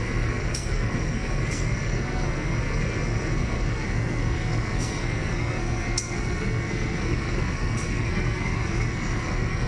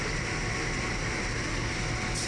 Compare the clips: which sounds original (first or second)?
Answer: second